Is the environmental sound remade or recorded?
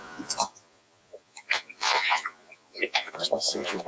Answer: remade